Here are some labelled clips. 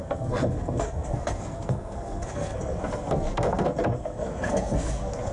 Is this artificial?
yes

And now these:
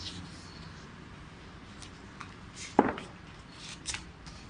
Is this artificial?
no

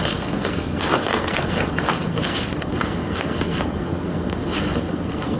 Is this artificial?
yes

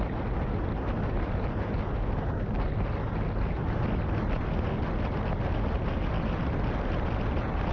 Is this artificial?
no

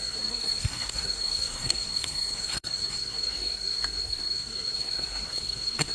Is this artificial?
yes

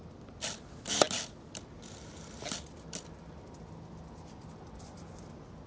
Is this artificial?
no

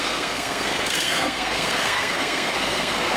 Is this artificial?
yes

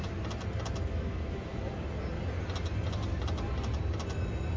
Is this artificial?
no